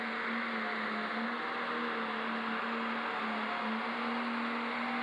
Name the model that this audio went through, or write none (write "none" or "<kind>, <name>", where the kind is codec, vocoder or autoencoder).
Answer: none